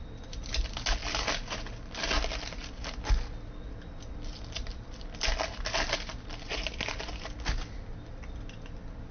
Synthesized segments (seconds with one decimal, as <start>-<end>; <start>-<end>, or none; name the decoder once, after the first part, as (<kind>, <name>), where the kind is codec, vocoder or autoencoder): none